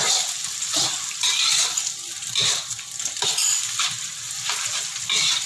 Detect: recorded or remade recorded